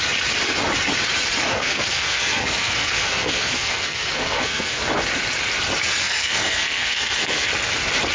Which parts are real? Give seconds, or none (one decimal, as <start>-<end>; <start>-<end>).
0.0-1.5; 4.8-6.0; 7.5-8.1